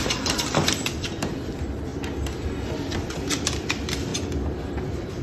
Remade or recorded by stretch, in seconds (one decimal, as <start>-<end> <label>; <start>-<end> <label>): 0.0-1.9 remade; 1.9-2.7 recorded; 2.7-4.1 remade; 4.1-4.6 recorded; 4.6-5.2 remade

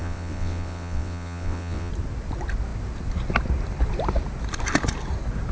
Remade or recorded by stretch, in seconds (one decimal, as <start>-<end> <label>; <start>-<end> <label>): 0.0-1.9 remade; 1.9-5.5 recorded